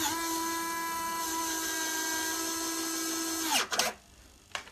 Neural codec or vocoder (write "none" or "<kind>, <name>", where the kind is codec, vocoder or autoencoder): none